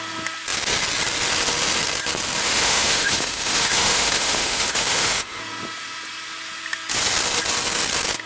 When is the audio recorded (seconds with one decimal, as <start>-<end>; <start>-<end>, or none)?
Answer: 0.0-2.4; 5.4-8.3